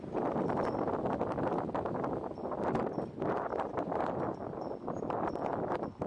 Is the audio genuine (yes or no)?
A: yes